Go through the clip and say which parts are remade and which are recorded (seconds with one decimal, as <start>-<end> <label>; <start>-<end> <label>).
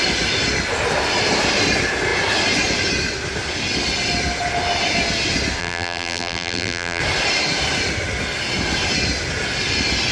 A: 0.0-5.6 recorded; 5.6-7.0 remade; 7.0-10.1 recorded